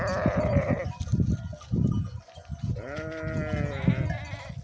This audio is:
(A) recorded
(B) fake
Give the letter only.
A